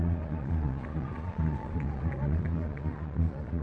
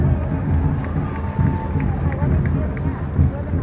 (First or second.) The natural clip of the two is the second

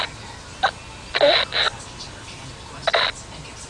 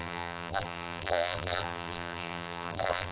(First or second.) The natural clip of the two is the first